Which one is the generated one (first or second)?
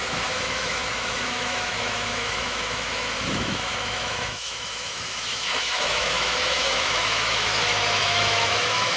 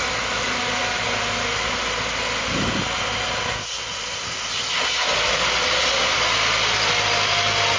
first